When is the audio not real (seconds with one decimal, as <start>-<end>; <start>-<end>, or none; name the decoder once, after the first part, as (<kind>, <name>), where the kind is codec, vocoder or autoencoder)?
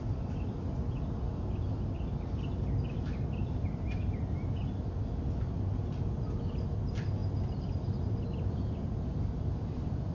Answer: none